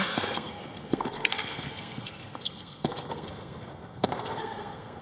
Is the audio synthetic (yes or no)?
yes